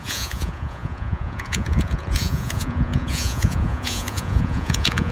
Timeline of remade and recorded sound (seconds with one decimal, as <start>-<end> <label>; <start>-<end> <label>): 0.0-5.1 remade

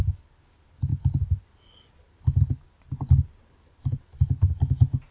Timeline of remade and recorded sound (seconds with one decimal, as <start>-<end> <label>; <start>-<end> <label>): 0.0-5.1 recorded

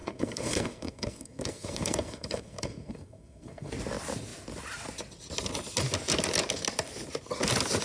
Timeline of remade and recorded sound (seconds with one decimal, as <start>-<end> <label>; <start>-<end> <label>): 0.0-3.7 remade; 3.7-7.8 recorded